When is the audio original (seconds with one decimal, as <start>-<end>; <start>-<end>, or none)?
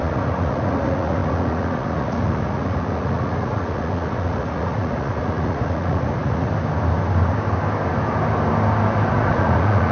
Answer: 6.5-9.1